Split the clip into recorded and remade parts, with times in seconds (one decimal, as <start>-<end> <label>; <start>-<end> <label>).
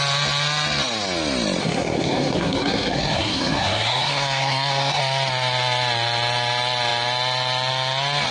0.0-1.6 recorded; 1.6-5.0 remade; 5.0-8.3 recorded